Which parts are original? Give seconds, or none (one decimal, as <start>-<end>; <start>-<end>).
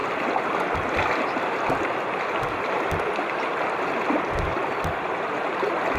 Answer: 0.0-6.0